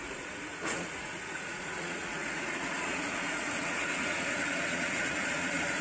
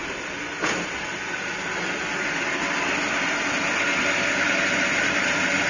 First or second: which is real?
second